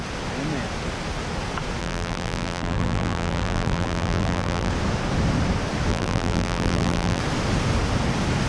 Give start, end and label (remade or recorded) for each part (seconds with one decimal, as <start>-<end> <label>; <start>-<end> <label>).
0.0-1.8 recorded; 1.8-4.7 remade; 4.7-5.9 recorded; 5.9-7.2 remade; 7.2-8.5 recorded